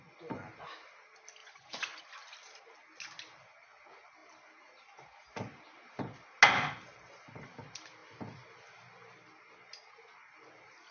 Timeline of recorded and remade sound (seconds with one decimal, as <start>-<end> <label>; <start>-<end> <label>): 0.0-1.4 recorded; 1.4-2.0 remade; 2.0-10.9 recorded